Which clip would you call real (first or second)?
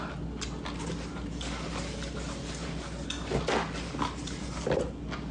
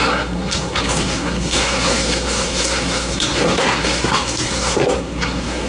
first